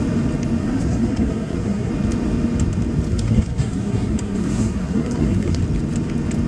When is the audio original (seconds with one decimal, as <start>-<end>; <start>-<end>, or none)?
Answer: 0.0-0.6; 1.9-3.1; 5.6-6.5